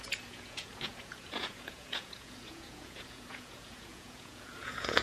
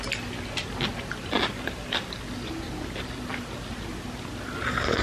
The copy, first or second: first